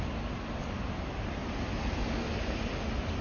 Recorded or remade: recorded